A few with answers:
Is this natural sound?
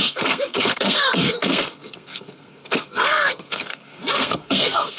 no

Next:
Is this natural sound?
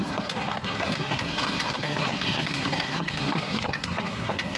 no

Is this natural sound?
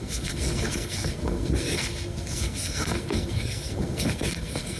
no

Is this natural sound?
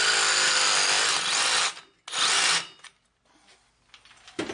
yes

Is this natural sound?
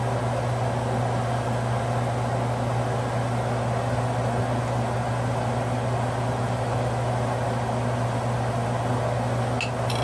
yes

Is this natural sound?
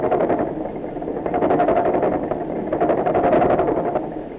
yes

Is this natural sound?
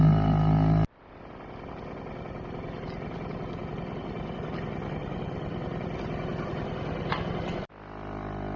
yes